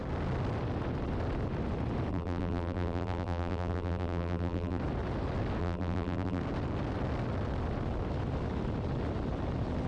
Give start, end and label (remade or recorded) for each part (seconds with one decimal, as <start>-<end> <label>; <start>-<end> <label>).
0.0-2.1 recorded; 2.1-4.8 remade; 4.8-5.6 recorded; 5.6-6.4 remade; 6.4-9.9 recorded